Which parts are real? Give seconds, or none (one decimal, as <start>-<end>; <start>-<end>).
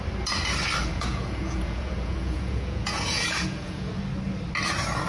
0.0-0.9; 4.0-5.1